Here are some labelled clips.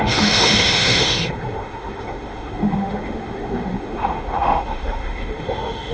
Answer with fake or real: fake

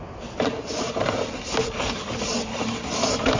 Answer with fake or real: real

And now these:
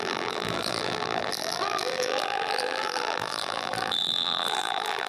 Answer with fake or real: fake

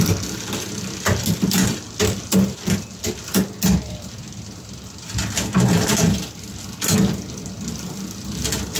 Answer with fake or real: real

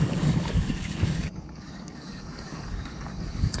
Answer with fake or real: fake